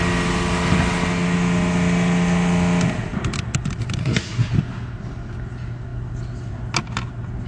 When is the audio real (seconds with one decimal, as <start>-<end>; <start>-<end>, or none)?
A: 0.0-4.0; 4.5-7.5